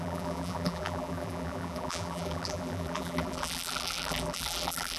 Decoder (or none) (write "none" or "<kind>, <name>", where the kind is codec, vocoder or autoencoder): vocoder, BigVGAN v2